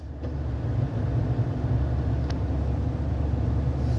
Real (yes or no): yes